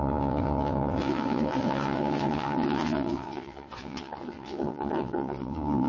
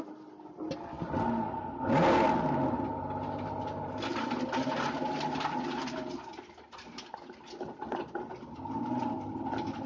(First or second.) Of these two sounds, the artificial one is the first